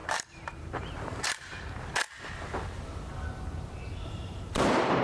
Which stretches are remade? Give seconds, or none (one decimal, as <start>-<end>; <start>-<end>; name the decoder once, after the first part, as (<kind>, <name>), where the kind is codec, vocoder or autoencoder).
0.0-1.5 (vocoder, BigVGAN v2); 4.1-5.0